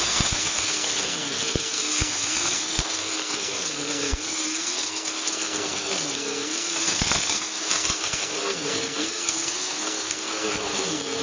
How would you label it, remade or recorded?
remade